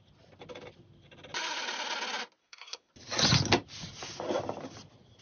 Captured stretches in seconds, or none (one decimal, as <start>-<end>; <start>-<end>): 0.0-2.4; 2.9-5.2